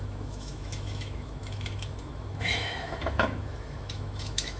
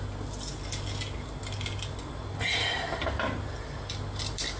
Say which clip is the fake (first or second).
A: first